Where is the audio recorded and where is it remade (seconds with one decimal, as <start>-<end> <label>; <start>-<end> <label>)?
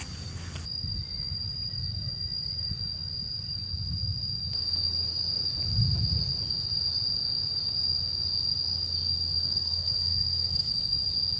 0.0-9.4 recorded; 9.4-10.7 remade; 10.7-11.4 recorded